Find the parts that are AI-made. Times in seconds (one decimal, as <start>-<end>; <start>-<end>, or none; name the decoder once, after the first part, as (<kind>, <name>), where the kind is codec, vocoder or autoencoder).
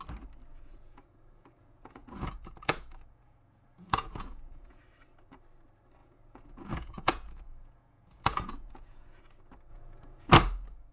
0.5-4.8 (vocoder, Vocos); 6.0-9.2; 9.7-10.3